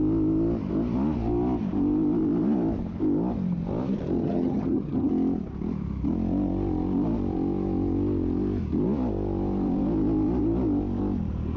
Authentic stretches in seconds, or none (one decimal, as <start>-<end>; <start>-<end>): 0.0-4.2; 5.1-11.6